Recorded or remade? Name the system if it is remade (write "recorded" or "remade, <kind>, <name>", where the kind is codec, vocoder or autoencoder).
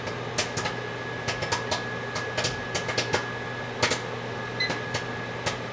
recorded